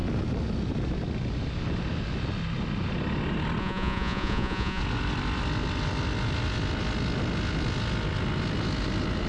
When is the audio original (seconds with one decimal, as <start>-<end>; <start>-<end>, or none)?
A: 0.0-3.6; 4.8-9.3